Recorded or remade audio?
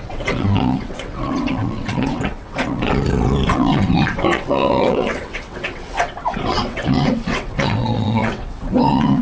remade